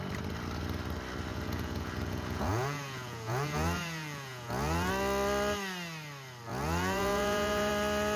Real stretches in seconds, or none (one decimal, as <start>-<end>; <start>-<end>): 0.0-1.3; 4.9-6.5; 7.7-8.2